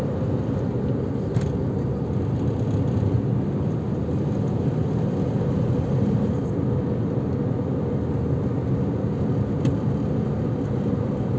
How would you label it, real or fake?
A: real